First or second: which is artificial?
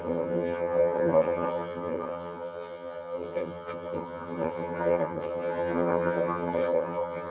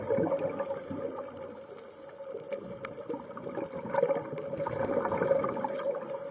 first